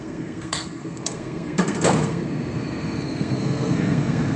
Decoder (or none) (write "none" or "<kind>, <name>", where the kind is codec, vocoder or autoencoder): codec, SNAC